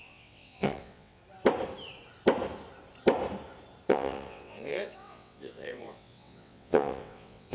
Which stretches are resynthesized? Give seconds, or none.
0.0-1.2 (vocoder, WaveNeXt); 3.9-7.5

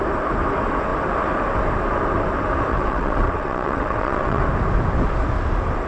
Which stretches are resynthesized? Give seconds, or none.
2.7-4.4 (vocoder, WaveNeXt)

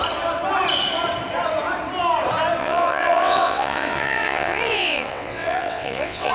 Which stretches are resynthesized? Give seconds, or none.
2.6-6.3 (vocoder, WaveNeXt)

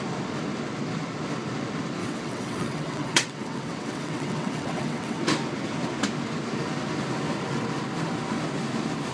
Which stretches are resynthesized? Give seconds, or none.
2.0-5.2 (vocoder, WaveNeXt)

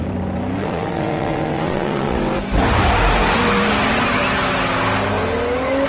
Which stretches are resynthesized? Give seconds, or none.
0.6-2.2 (vocoder, WaveNeXt)

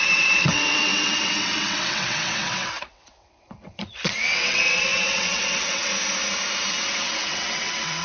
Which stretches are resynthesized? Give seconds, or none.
0.0-5.9 (vocoder, WaveNeXt); 6.7-8.0

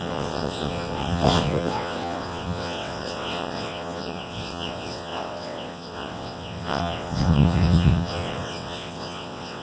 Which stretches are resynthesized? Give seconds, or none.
0.0-9.6 (vocoder, WaveNeXt)

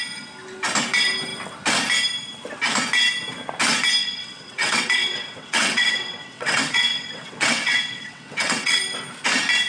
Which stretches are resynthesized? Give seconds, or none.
4.0-8.8 (vocoder, WaveNeXt)